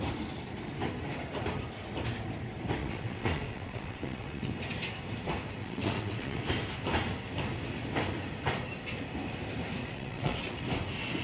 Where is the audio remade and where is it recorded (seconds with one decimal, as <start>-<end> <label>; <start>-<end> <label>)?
0.0-2.8 recorded; 2.8-4.5 remade; 4.5-5.6 recorded; 5.6-6.5 remade; 6.5-9.8 recorded; 9.8-10.6 remade; 10.6-11.2 recorded